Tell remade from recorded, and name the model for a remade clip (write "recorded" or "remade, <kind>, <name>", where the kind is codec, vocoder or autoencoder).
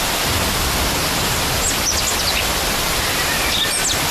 recorded